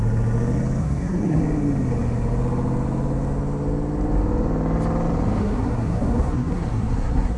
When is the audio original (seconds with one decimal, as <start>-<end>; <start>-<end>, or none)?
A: 0.0-0.8; 1.4-5.4